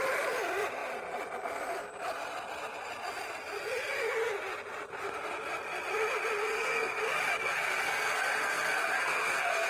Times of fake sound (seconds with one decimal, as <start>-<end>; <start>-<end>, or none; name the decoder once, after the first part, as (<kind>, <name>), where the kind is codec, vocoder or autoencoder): 6.4-7.0 (codec, SNAC); 7.4-9.7